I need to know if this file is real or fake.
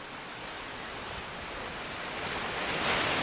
real